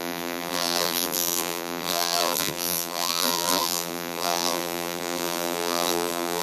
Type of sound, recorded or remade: remade